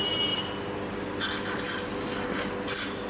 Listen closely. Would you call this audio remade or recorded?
recorded